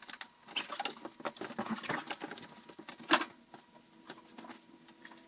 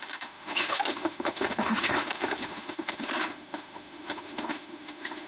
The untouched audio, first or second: first